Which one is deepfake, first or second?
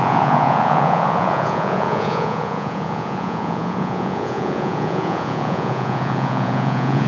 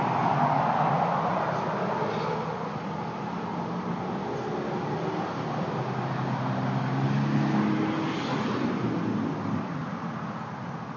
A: first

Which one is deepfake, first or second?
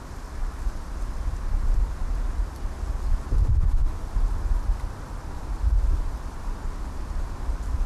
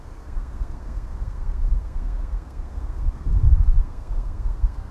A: second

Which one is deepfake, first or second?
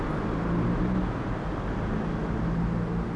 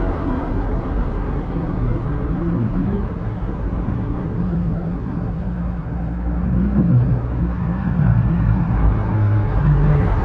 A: second